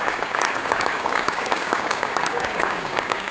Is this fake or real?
fake